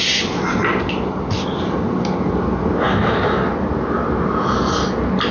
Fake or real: real